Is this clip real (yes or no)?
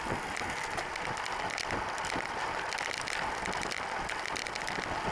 yes